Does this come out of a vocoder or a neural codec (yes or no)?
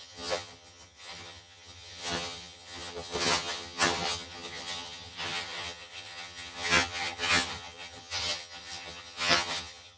yes